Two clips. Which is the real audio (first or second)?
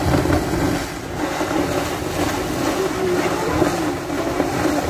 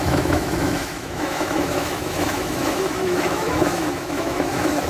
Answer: first